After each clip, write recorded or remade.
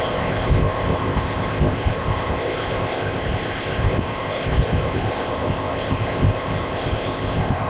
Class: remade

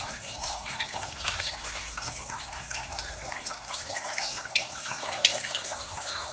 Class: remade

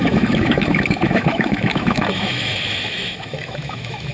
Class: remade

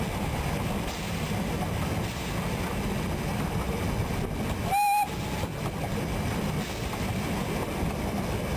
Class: recorded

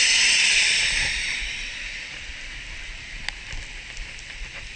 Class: recorded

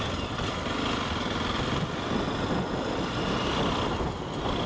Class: recorded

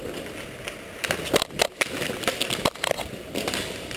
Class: remade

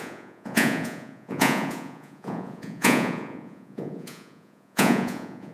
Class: remade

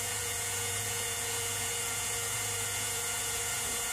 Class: remade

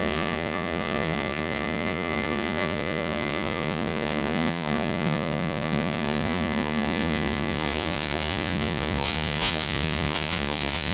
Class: remade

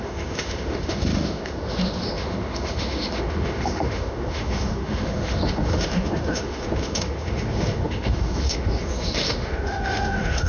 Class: remade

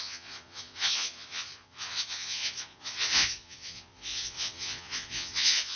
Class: remade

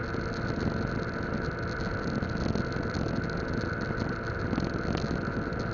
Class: recorded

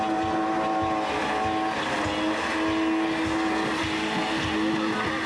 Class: recorded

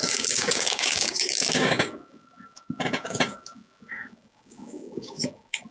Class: remade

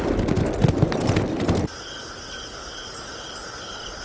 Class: recorded